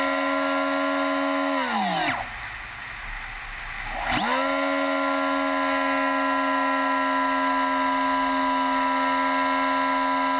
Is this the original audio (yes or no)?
yes